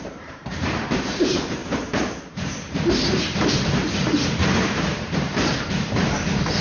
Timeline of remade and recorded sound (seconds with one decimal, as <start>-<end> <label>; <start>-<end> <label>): 0.0-6.6 remade